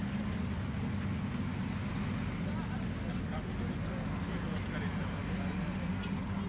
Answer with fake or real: real